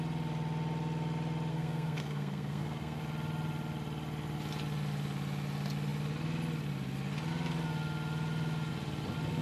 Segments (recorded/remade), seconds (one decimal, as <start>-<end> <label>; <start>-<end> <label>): 0.0-1.5 recorded; 1.5-3.0 remade; 3.0-9.4 recorded

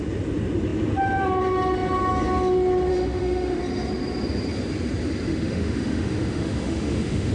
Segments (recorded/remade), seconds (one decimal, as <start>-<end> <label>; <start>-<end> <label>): 0.0-2.9 recorded; 2.9-3.6 remade; 3.6-5.3 recorded; 5.3-7.3 remade

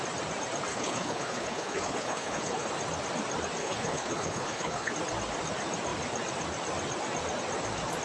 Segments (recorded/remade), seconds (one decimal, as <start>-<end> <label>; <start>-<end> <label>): 0.0-0.7 recorded; 0.7-2.7 remade; 2.7-3.6 recorded; 3.6-4.9 remade; 4.9-8.0 recorded

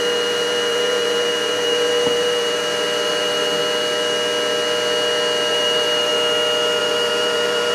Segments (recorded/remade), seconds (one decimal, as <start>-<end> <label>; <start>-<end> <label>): 0.0-3.6 remade; 3.6-5.5 recorded; 5.5-6.1 remade; 6.1-6.8 recorded; 6.8-7.7 remade

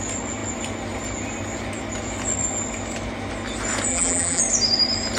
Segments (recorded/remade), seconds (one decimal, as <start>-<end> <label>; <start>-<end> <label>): 0.0-3.9 recorded; 3.9-4.4 remade; 4.4-5.2 recorded

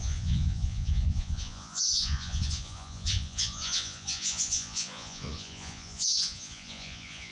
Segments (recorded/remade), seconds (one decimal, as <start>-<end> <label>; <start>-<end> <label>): 0.0-7.3 remade

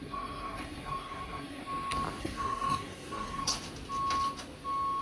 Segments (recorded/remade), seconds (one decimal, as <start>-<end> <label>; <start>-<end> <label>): 0.0-1.6 remade; 1.6-2.2 recorded; 2.2-3.5 remade; 3.5-5.0 recorded